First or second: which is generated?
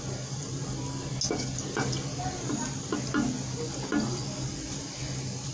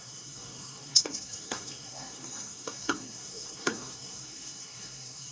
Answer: second